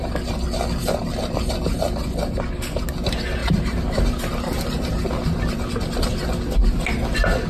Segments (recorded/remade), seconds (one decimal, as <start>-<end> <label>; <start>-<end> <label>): 0.0-3.4 recorded; 3.4-4.1 remade; 4.1-7.5 recorded